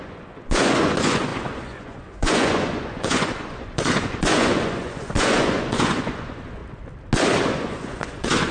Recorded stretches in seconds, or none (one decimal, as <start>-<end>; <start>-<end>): 6.6-7.5